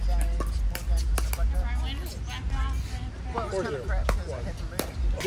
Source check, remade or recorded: recorded